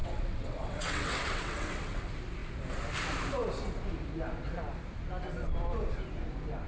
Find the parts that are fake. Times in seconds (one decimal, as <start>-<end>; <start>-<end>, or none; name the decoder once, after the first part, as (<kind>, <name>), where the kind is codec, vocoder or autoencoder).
0.0-2.0 (vocoder, WaveNeXt)